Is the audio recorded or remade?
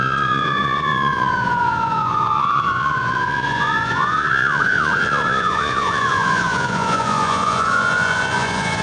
remade